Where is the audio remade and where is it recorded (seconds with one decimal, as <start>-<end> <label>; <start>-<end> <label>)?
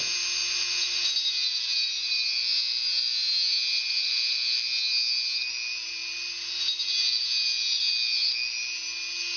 0.0-9.4 recorded